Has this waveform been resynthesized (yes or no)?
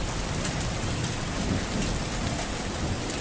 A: no